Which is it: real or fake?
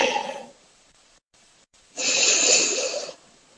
fake